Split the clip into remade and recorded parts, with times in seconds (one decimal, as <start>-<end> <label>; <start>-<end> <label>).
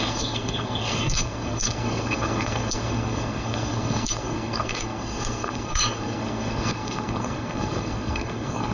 0.0-8.7 remade